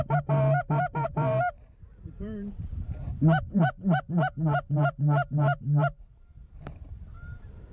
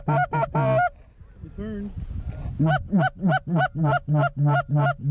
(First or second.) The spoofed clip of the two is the first